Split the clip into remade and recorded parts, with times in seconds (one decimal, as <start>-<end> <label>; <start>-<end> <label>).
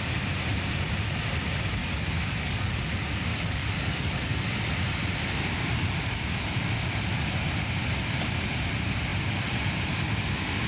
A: 0.0-1.8 recorded; 1.8-2.9 remade; 2.9-3.3 recorded; 3.3-4.4 remade; 4.4-10.7 recorded